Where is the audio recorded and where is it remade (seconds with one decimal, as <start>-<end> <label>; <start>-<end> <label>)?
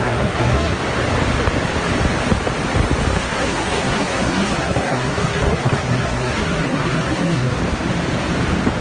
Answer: 0.0-0.8 remade; 0.8-3.2 recorded; 3.2-7.6 remade; 7.6-8.8 recorded